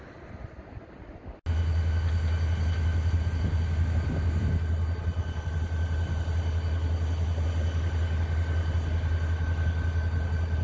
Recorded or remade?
recorded